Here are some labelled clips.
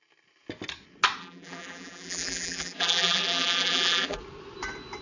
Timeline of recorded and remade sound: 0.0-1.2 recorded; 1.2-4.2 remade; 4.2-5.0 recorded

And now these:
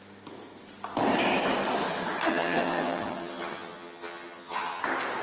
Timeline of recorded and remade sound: 0.0-2.3 recorded; 2.3-4.8 remade; 4.8-5.2 recorded

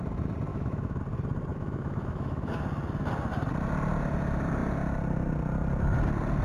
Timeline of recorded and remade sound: 0.0-0.5 recorded; 0.5-1.0 remade; 1.0-1.5 recorded; 1.5-2.6 remade; 2.6-6.4 recorded

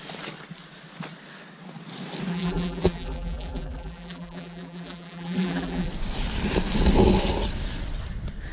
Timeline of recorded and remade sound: 0.0-2.3 recorded; 2.3-5.9 remade; 5.9-8.5 recorded

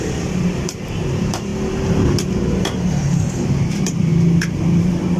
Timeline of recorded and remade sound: 0.0-1.5 remade; 1.5-2.1 recorded; 2.1-4.1 remade; 4.1-4.8 recorded; 4.8-5.2 remade

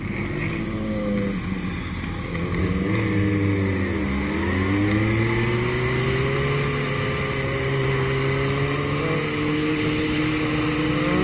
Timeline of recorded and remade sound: 0.0-9.5 recorded; 9.5-10.2 remade; 10.2-11.2 recorded

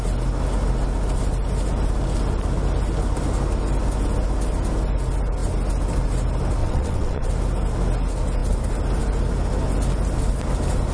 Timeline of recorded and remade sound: 0.0-6.6 recorded; 6.6-7.3 remade; 7.3-10.9 recorded

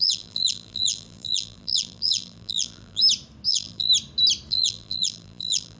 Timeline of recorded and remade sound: 0.0-3.0 remade; 3.0-3.5 recorded; 3.5-3.9 remade; 3.9-4.5 recorded; 4.5-5.8 remade